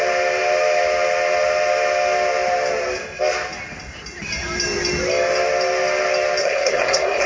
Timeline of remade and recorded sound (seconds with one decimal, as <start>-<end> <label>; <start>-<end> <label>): 0.0-6.4 recorded; 6.4-7.3 remade